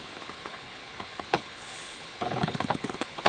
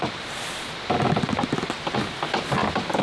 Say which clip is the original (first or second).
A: second